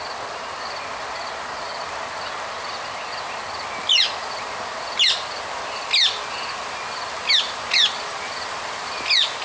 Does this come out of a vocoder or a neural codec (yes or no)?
no